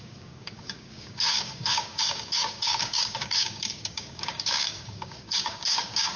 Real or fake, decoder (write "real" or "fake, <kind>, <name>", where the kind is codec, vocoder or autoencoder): fake, codec, DAC